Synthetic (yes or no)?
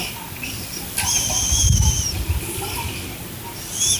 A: no